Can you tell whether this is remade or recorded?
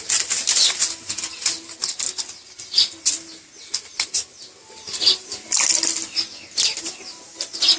recorded